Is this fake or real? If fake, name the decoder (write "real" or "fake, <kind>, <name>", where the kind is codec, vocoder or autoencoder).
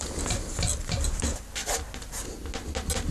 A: real